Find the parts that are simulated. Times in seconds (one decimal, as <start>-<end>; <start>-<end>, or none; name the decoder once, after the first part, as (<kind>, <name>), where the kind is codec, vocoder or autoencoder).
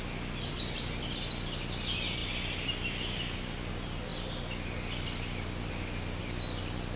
none